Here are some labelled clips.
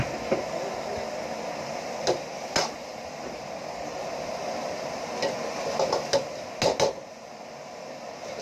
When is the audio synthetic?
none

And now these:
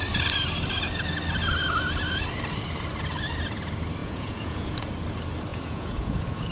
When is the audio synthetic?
4.0-4.9 (vocoder, Vocos); 5.5-6.5

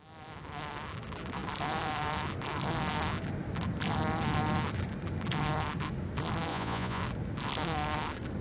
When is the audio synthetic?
6.5-7.0 (vocoder, Vocos)

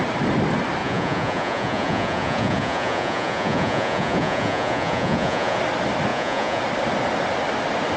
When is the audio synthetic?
0.8-5.6 (vocoder, Vocos); 6.1-6.6

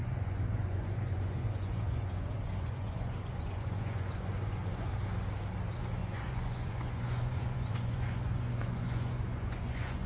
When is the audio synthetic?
0.0-4.9 (vocoder, Vocos); 6.0-10.1